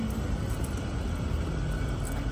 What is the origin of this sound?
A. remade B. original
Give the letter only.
B